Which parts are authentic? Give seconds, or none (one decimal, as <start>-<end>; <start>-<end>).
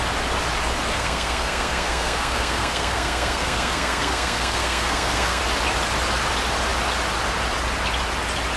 0.0-0.9; 5.4-8.6